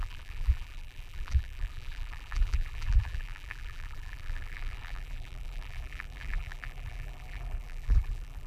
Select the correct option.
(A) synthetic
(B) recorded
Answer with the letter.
A